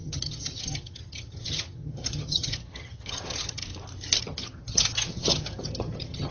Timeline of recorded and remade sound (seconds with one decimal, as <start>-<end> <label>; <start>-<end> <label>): 0.0-3.6 remade; 3.6-4.2 recorded; 4.2-6.3 remade